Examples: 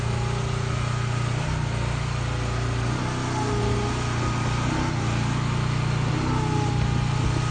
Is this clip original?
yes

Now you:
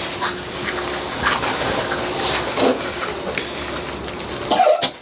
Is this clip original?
yes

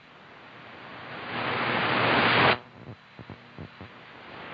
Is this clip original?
yes